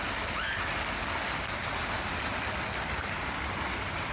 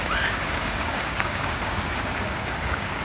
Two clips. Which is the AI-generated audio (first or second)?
second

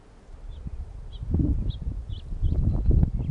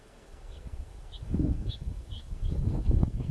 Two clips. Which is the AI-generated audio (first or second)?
second